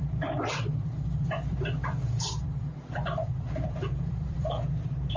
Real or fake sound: fake